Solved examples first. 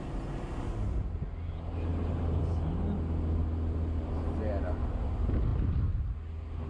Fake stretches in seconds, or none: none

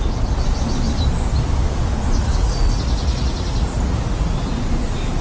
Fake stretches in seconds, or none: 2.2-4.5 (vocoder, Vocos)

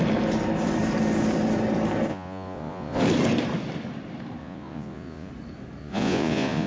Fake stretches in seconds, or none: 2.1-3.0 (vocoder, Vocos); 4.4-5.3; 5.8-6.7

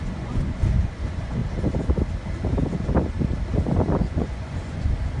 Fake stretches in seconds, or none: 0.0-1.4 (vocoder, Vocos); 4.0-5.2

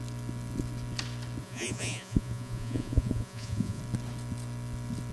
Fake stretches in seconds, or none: 1.4-3.8 (vocoder, Vocos)

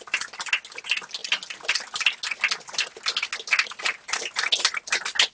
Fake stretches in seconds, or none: none

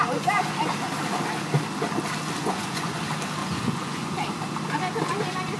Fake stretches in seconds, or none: 2.4-3.0 (vocoder, Vocos); 3.4-4.1